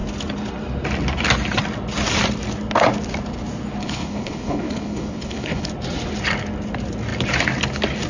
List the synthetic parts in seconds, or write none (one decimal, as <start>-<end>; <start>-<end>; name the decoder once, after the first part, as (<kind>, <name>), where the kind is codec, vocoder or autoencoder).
3.8-5.7 (codec, HILCodec)